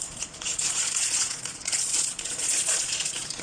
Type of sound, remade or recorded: remade